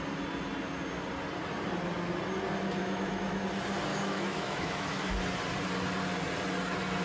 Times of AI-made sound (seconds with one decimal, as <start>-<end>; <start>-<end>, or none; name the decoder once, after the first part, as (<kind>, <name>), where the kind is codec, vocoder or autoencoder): 2.8-3.4 (autoencoder, DAC-VAE); 3.9-5.1